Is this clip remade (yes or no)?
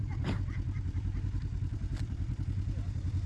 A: yes